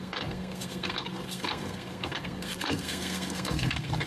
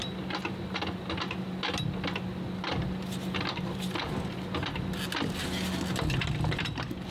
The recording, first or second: second